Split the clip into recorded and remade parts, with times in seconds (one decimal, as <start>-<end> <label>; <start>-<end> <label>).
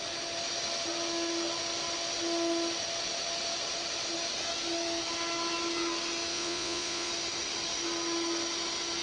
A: 0.0-6.3 recorded; 6.3-7.1 remade; 7.1-9.0 recorded